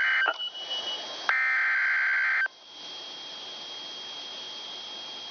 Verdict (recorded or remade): recorded